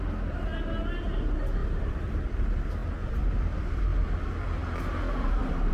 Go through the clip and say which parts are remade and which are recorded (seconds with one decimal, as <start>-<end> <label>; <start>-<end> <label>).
0.0-1.6 recorded; 1.6-2.4 remade; 2.4-3.0 recorded; 3.0-3.8 remade; 3.8-5.7 recorded